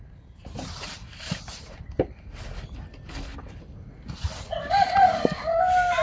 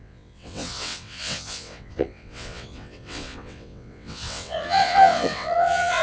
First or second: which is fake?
second